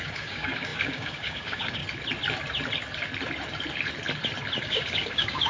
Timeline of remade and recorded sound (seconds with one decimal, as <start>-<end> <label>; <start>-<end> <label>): 0.0-1.8 remade; 1.8-4.6 recorded; 4.6-5.5 remade